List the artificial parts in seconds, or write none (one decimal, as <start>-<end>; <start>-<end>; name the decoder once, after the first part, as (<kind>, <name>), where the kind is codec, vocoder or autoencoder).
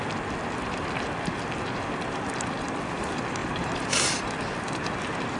3.4-4.2 (vocoder, BigVGAN v2)